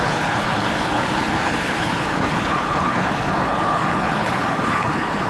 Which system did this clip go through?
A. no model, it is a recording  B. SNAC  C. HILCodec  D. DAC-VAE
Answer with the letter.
C